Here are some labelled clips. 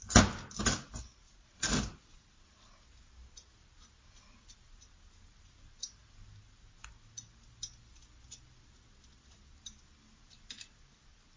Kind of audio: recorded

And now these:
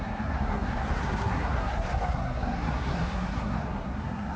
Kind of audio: remade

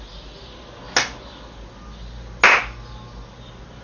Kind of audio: recorded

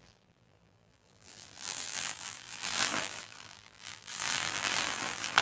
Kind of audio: remade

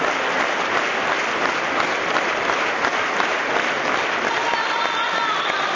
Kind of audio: recorded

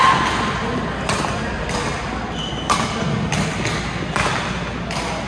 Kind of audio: recorded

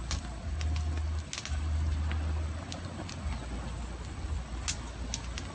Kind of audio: recorded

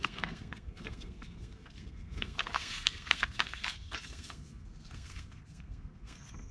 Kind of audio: remade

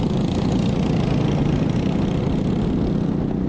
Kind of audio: recorded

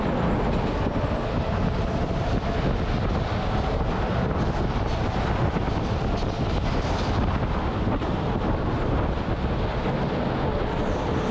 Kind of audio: recorded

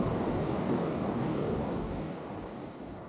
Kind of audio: remade